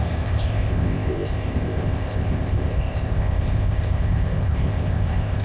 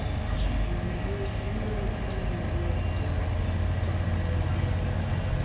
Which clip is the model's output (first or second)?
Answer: first